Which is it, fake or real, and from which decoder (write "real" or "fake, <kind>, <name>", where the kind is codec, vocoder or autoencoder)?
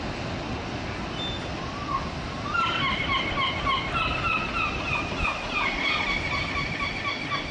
real